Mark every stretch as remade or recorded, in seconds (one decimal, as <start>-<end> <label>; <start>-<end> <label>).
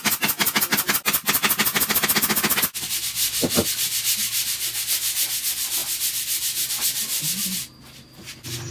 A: 0.0-8.7 recorded